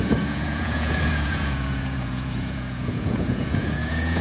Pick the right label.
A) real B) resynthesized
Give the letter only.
B